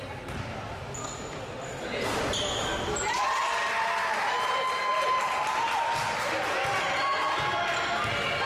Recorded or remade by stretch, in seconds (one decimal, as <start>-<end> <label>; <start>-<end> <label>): 0.0-8.5 recorded